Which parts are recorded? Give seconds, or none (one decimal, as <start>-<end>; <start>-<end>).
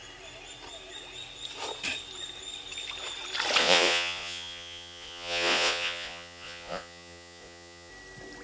0.0-3.6; 7.9-8.4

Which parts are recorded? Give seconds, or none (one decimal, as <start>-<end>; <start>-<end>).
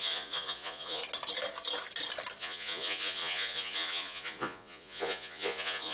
1.0-2.4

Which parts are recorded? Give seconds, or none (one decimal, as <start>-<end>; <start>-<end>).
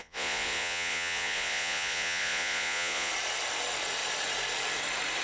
3.1-5.2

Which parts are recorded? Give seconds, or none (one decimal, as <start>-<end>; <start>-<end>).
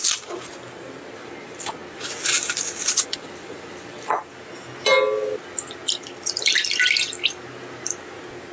0.0-8.5